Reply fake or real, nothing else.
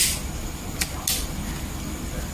real